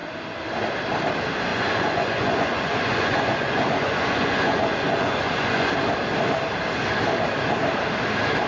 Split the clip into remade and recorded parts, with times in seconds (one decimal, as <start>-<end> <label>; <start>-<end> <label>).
0.0-1.5 recorded; 1.5-5.7 remade; 5.7-8.5 recorded